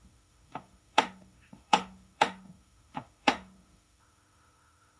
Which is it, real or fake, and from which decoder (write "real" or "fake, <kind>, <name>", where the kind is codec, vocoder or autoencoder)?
fake, autoencoder, DAC-VAE